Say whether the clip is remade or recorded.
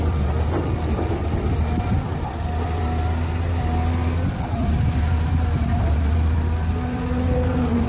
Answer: recorded